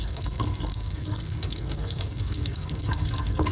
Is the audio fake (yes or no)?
yes